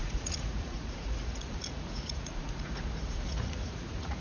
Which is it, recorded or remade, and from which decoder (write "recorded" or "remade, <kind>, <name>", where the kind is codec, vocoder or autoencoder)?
remade, vocoder, Vocos